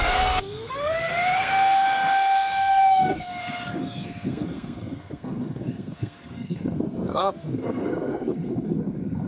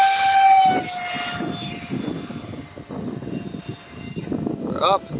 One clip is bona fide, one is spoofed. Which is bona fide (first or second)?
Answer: second